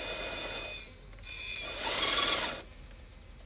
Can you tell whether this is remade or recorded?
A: recorded